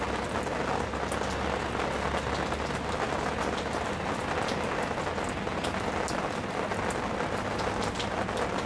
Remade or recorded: recorded